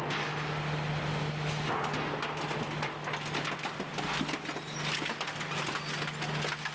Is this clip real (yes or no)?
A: yes